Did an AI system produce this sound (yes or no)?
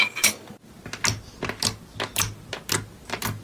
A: no